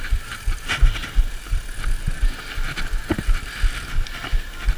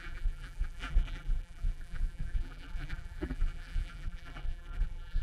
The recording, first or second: first